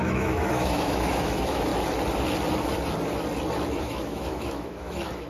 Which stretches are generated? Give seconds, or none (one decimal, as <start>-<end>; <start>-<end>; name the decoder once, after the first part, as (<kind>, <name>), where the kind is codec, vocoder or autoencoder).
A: 0.0-1.7 (autoencoder, DAC-VAE); 3.8-5.3